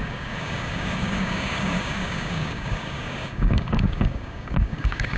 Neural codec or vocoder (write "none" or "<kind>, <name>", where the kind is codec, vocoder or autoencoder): codec, DAC